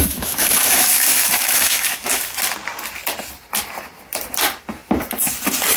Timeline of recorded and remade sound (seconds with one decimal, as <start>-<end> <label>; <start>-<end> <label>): 0.0-2.2 remade; 2.2-5.8 recorded